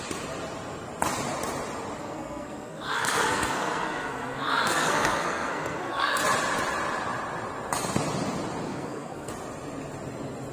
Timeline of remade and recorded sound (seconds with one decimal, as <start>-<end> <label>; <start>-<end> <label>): 0.0-2.0 recorded; 2.0-6.2 remade; 6.2-8.7 recorded; 8.7-9.3 remade; 9.3-10.5 recorded